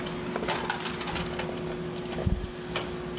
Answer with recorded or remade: recorded